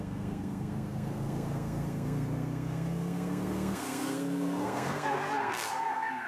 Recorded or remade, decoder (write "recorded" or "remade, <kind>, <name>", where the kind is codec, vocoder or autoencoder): remade, codec, SNAC